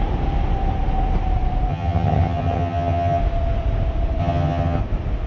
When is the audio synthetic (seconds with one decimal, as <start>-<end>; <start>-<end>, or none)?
1.7-3.2; 4.2-4.8